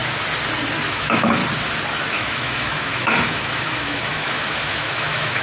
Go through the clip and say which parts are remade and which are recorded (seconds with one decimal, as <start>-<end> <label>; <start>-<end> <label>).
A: 0.0-0.9 recorded; 0.9-1.4 remade; 1.4-2.1 recorded; 2.1-5.4 remade